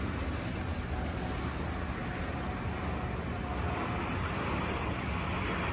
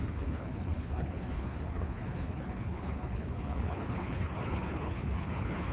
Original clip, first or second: first